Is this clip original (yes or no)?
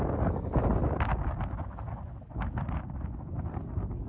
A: yes